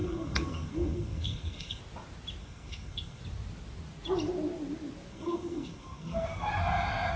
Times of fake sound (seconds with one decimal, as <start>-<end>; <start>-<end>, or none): 0.0-1.8; 2.4-3.2; 5.1-6.5